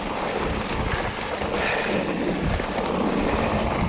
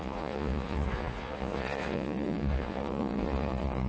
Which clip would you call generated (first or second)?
second